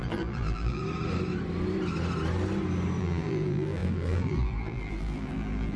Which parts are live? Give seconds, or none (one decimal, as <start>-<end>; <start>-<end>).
0.8-3.0